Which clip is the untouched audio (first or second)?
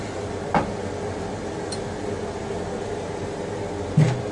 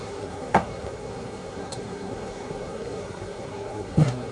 first